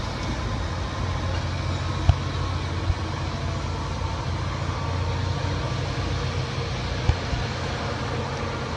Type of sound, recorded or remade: recorded